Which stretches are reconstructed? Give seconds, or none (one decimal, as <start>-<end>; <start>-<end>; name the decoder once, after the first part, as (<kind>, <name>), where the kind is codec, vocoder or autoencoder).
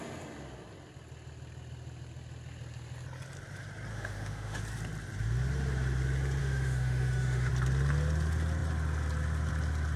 3.9-4.6 (autoencoder, DAC-VAE); 6.4-7.5